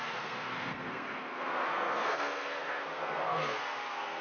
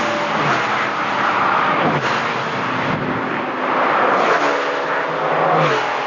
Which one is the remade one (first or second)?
first